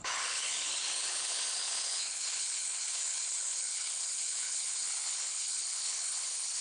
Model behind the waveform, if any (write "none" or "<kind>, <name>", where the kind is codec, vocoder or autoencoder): codec, HILCodec